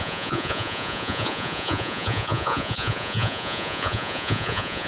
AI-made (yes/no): yes